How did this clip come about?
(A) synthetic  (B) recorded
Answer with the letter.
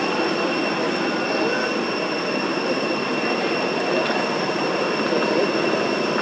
B